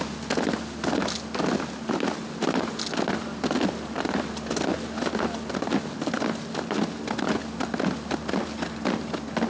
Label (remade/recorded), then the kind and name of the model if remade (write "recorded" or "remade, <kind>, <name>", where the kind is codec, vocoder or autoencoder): recorded